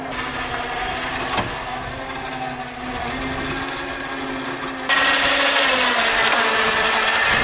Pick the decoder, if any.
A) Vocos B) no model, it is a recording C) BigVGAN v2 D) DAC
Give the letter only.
B